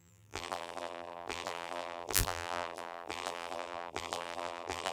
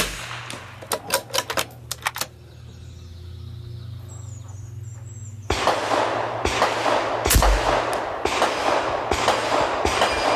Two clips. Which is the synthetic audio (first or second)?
first